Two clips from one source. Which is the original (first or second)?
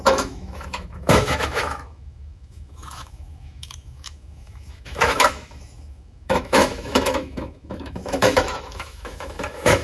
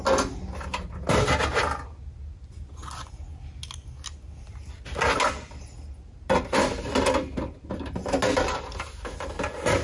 second